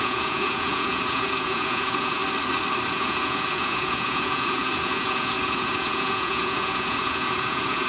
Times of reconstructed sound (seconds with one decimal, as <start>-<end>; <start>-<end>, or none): 0.0-2.2; 2.9-7.9